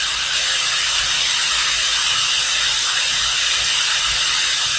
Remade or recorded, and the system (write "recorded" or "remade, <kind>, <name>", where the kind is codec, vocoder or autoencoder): recorded